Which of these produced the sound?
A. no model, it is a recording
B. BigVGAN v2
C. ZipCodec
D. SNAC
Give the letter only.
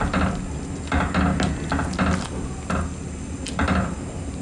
A